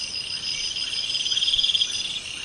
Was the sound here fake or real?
fake